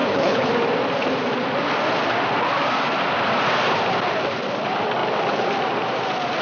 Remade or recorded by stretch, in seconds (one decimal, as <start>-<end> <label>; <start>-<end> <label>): 0.0-0.5 remade; 0.5-6.4 recorded

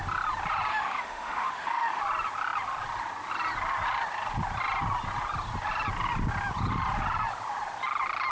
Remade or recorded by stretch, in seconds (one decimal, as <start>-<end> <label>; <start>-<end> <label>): 0.0-0.7 recorded; 0.7-2.0 remade; 2.0-8.3 recorded

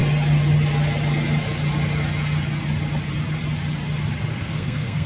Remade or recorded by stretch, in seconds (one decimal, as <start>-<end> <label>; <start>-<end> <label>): 0.0-4.3 recorded; 4.3-5.1 remade